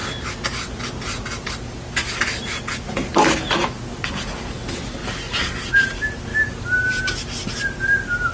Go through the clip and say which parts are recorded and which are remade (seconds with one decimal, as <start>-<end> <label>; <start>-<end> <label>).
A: 0.0-8.3 recorded